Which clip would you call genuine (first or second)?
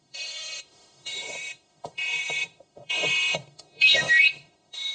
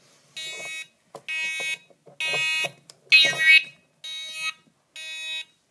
second